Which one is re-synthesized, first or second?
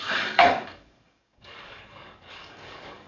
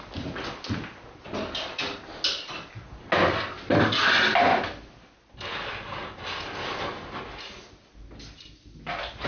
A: first